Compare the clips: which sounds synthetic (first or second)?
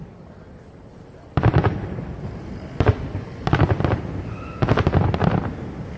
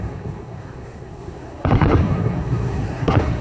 second